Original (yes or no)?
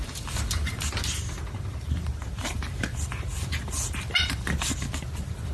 no